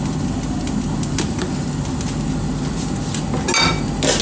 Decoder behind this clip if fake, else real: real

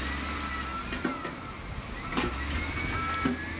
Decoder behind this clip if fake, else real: real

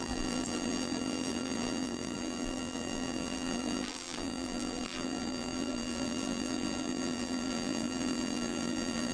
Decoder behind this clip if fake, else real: fake, vocoder, BigVGAN v2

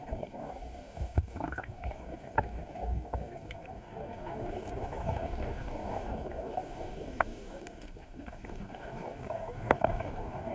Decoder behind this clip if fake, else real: fake, codec, DAC